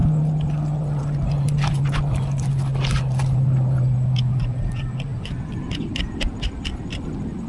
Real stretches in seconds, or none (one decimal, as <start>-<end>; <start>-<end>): 0.0-7.5